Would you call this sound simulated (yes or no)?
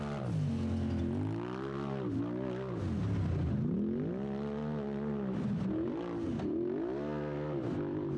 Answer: no